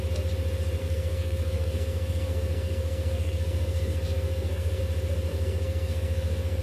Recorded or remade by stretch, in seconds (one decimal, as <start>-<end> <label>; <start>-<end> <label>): 0.0-0.8 recorded; 0.8-4.8 remade; 4.8-5.3 recorded; 5.3-6.6 remade